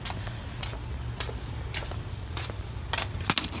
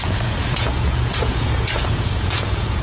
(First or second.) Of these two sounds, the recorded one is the first